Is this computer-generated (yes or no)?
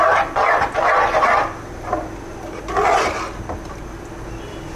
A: no